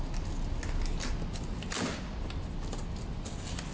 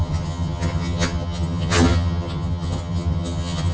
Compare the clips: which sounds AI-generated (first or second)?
second